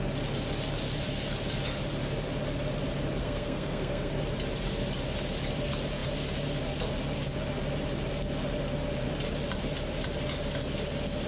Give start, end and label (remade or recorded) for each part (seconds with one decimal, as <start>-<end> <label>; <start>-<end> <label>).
0.0-3.2 recorded; 3.2-4.1 remade; 4.1-11.3 recorded